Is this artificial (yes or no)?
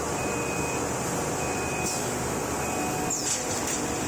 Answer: no